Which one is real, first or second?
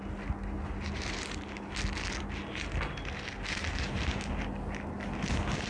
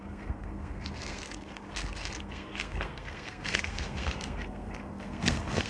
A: first